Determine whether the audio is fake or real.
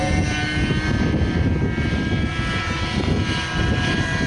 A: real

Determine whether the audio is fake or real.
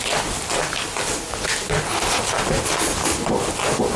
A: real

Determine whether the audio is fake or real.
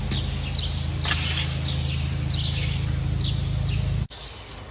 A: real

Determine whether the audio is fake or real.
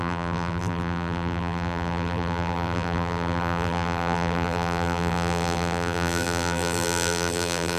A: fake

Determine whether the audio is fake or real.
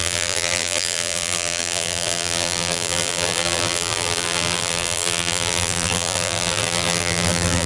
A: fake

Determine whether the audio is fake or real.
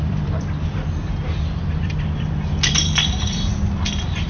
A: fake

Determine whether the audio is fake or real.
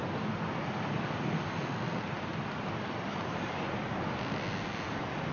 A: real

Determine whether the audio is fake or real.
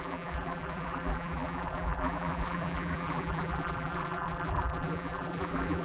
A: fake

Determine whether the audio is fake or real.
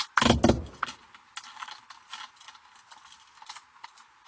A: real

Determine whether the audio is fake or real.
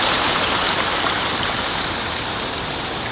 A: fake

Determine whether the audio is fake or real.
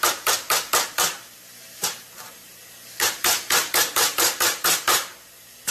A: fake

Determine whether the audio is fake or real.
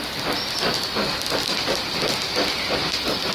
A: real